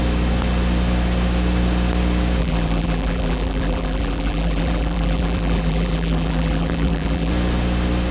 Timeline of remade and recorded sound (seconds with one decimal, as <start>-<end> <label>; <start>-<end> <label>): 0.0-2.4 recorded; 2.4-7.3 remade; 7.3-8.1 recorded